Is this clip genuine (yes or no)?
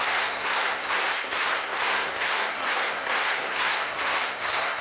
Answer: no